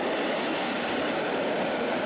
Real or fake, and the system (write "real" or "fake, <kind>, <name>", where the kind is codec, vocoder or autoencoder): real